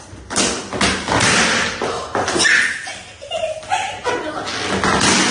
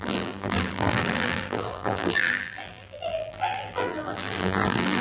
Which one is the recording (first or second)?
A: first